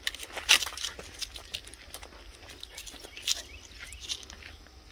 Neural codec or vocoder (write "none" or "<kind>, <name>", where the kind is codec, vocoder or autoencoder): none